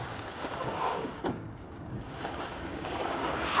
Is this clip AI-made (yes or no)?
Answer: yes